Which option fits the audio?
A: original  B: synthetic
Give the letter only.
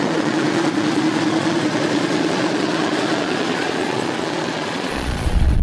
B